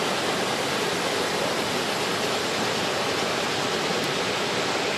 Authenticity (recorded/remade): recorded